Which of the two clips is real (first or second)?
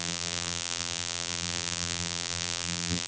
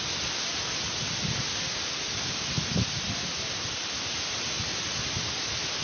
second